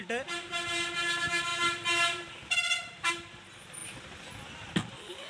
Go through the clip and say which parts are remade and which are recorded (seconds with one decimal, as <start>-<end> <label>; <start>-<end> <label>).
0.0-5.3 recorded